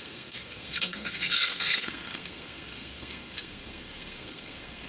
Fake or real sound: fake